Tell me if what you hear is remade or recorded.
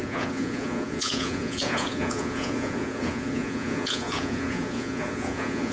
remade